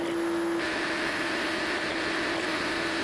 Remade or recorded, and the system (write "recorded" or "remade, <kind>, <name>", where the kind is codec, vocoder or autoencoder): recorded